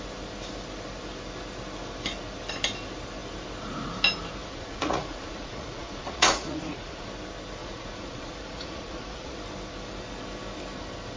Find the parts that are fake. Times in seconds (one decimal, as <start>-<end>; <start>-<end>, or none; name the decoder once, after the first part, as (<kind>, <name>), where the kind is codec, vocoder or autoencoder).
4.4-7.1 (vocoder, Vocos); 7.6-9.4